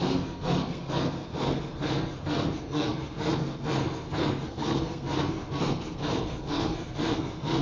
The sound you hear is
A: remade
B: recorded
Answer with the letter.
A